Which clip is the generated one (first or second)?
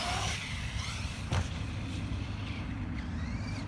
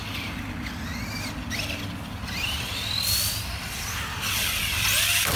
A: first